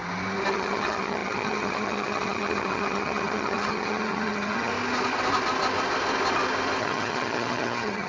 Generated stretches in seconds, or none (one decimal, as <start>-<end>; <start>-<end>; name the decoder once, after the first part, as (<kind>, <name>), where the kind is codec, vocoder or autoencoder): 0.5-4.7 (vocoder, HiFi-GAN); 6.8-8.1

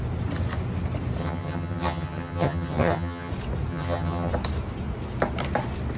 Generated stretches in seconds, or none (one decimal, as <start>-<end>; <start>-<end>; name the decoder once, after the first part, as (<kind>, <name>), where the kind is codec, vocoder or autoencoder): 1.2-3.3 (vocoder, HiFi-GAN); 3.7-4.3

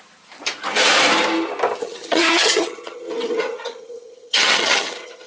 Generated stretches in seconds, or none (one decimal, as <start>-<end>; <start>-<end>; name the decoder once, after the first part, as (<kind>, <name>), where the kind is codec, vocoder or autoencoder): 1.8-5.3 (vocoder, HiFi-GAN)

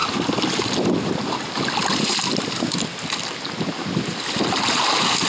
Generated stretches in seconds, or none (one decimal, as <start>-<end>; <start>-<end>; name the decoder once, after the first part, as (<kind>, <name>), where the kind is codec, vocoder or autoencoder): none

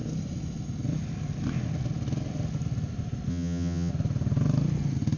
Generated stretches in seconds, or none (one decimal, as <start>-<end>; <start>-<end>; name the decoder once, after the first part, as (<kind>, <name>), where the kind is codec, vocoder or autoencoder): 3.3-3.9 (vocoder, HiFi-GAN)

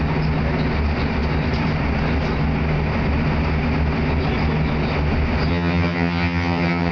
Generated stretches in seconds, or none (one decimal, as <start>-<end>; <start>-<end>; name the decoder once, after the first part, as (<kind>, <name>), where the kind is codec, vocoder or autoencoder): 5.5-6.9 (vocoder, HiFi-GAN)

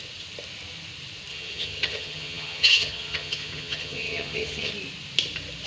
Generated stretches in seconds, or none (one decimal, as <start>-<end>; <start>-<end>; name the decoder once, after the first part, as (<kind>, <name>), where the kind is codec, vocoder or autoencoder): 1.3-4.7 (vocoder, HiFi-GAN)

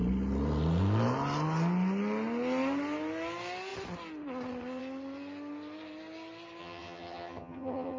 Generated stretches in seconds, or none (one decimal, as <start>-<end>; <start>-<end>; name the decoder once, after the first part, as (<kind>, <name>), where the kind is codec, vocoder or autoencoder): 6.6-8.0 (vocoder, HiFi-GAN)